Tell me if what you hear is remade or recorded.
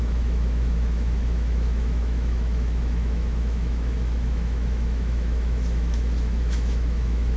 remade